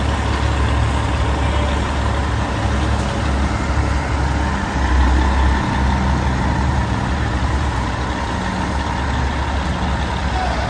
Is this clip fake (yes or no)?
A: no